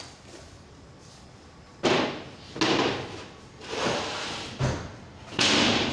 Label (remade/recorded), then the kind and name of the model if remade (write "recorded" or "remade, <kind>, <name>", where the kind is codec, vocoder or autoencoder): recorded